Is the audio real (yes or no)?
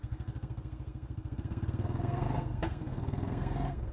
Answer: no